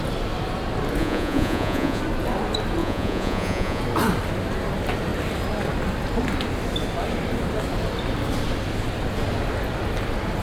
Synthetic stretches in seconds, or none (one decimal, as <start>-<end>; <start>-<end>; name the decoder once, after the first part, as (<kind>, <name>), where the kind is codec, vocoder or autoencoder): 1.0-2.0 (vocoder, Vocos); 2.8-3.8